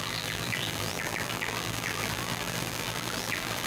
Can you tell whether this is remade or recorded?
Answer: remade